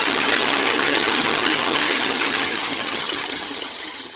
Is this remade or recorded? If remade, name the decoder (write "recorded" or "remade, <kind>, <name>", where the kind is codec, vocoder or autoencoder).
remade, vocoder, HiFi-GAN